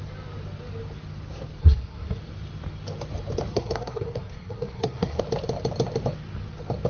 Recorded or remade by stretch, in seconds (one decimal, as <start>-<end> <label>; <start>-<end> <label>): 0.0-1.6 recorded; 1.6-2.2 remade; 2.2-3.5 recorded; 3.5-5.2 remade; 5.2-6.9 recorded